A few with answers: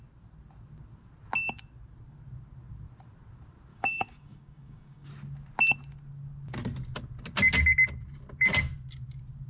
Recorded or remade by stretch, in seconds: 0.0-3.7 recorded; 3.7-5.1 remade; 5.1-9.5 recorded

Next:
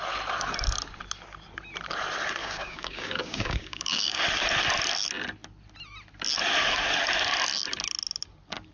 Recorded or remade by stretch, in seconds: 0.0-2.4 recorded; 2.4-4.2 remade; 4.2-8.7 recorded

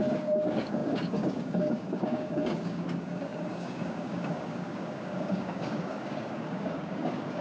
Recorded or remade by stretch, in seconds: 0.0-7.4 remade

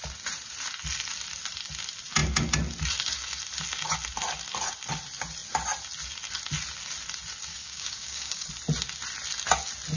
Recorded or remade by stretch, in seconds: 0.0-7.5 recorded; 7.5-8.5 remade; 8.5-10.0 recorded

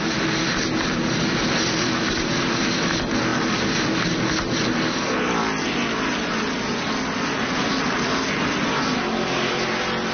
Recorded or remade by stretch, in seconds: 0.0-10.1 recorded

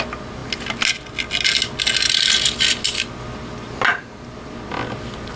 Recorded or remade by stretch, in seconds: 0.0-5.4 recorded

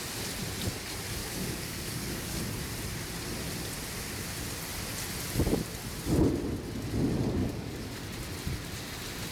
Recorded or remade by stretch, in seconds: 0.0-1.2 recorded; 1.2-2.4 remade; 2.4-7.4 recorded; 7.4-8.0 remade; 8.0-9.3 recorded

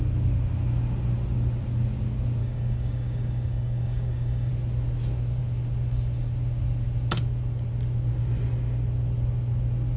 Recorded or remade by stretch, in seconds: 0.0-2.4 recorded; 2.4-4.5 remade; 4.5-10.0 recorded